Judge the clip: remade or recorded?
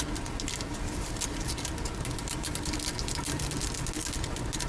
recorded